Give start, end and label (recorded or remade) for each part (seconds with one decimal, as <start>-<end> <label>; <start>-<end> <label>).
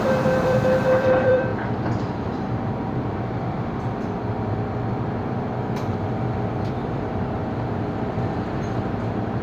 0.0-9.4 remade